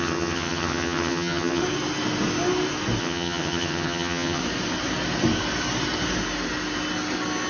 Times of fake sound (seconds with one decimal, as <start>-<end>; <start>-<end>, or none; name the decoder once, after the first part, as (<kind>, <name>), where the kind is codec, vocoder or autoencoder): 0.0-1.6 (vocoder, HiFi-GAN); 3.0-4.4